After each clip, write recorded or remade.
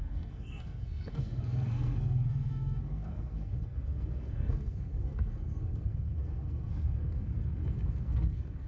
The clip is remade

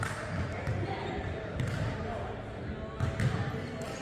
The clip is recorded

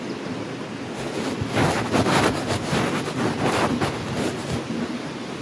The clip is recorded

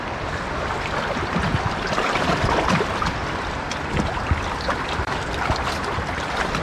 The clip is remade